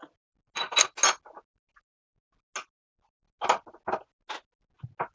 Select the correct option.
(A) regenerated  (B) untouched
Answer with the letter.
B